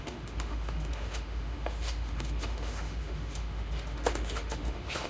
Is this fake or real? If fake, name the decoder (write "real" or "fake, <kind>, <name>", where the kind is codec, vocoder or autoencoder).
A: fake, autoencoder, DAC-VAE